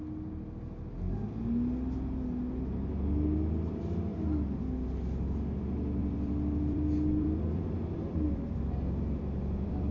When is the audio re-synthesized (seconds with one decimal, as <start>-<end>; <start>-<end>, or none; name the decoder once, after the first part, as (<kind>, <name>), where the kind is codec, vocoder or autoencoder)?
6.0-9.9 (vocoder, BigVGAN v2)